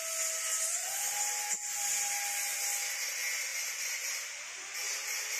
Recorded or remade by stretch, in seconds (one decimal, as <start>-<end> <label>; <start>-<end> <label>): 0.0-5.4 recorded

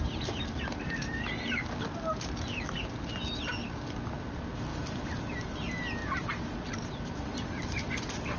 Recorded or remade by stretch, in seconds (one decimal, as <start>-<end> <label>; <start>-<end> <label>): 0.0-4.7 recorded; 4.7-5.3 remade; 5.3-6.0 recorded; 6.0-8.4 remade

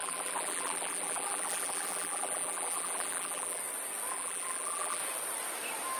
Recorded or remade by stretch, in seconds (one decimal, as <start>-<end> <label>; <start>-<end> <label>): 0.0-3.6 remade; 3.6-4.1 recorded; 4.1-5.0 remade; 5.0-6.0 recorded

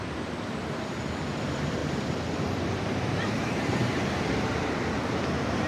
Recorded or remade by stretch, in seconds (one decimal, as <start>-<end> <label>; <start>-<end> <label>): 0.0-1.8 recorded; 1.8-5.2 remade; 5.2-5.7 recorded